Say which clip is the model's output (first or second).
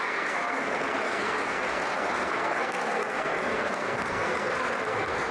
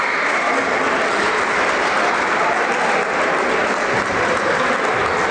first